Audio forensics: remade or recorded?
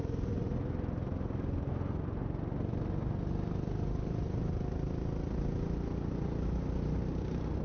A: recorded